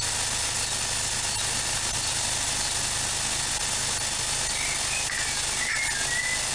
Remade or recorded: recorded